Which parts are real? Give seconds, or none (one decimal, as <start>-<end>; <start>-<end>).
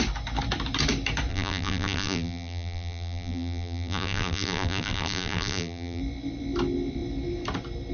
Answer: 0.0-1.3; 6.0-7.9